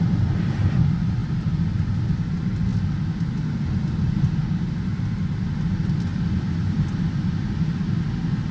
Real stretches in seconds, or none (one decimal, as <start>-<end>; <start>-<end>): 0.0-6.1; 7.2-8.5